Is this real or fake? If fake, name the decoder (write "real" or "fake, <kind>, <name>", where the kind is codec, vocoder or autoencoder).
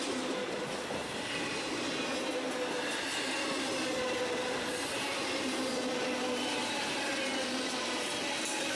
real